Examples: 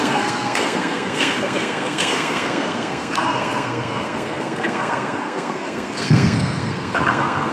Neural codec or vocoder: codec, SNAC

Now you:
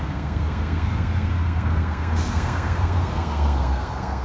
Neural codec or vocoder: codec, SNAC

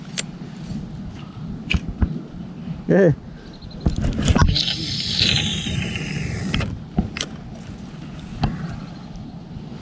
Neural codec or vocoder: none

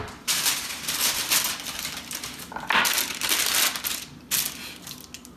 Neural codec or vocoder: none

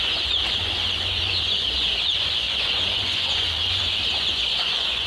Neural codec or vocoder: vocoder, Vocos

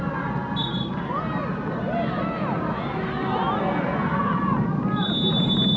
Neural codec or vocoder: none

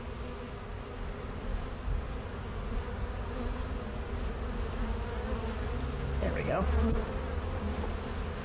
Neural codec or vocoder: none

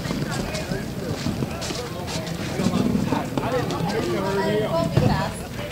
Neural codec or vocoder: none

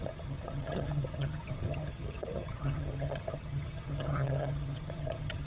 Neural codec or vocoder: vocoder, HiFi-GAN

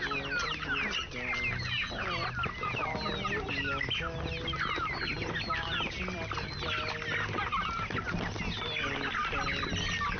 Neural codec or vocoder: none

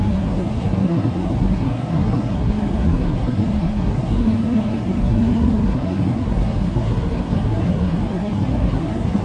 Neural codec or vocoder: codec, SNAC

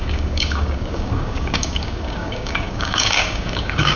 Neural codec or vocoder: codec, DAC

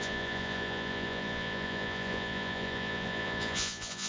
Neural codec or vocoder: vocoder, Vocos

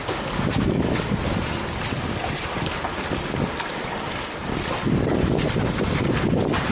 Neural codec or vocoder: none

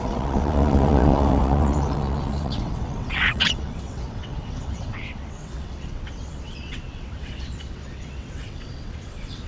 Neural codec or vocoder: vocoder, WaveNeXt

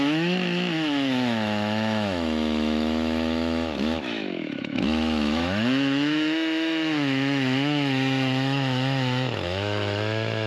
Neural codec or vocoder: autoencoder, DAC-VAE